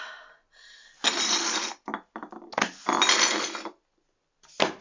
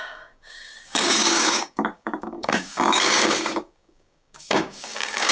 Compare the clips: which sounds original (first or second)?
first